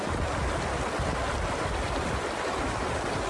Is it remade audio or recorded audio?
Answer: recorded